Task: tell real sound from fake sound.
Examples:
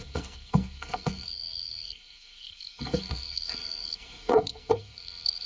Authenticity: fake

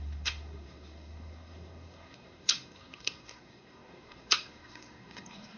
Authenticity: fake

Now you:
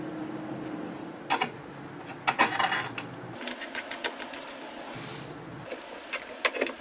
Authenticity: real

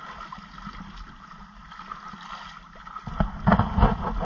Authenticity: real